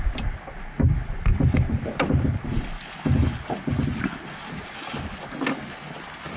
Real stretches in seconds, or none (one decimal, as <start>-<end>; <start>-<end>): 0.0-6.4